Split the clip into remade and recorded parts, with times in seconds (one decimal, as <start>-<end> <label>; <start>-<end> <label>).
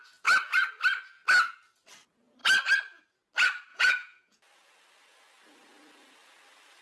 0.0-3.7 recorded; 3.7-4.4 remade; 4.4-6.8 recorded